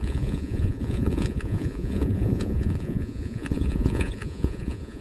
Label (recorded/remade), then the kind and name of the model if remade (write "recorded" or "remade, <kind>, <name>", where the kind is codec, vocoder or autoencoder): remade, vocoder, Vocos